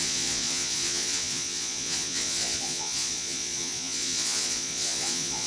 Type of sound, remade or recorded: remade